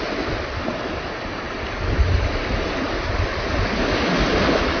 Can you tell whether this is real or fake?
real